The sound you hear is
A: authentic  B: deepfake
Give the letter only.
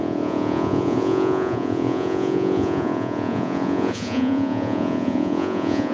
B